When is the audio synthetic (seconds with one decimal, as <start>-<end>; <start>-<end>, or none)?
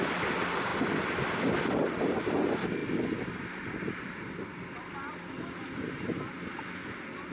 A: none